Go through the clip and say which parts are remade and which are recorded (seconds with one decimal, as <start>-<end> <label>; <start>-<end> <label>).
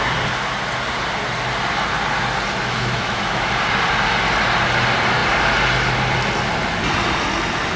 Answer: 0.0-2.6 recorded; 2.6-3.5 remade; 3.5-7.8 recorded